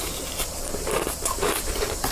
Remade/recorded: remade